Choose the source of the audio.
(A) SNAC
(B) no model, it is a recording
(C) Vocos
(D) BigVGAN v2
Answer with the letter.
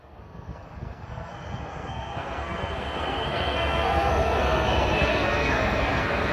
A